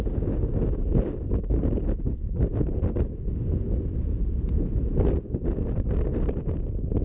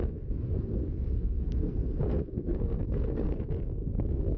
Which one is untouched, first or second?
first